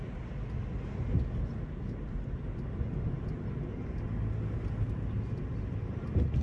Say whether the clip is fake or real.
real